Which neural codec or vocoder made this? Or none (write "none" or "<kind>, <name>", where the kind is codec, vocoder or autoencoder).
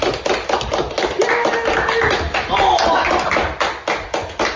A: none